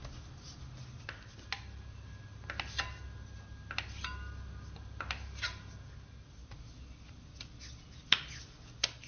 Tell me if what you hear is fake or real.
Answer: real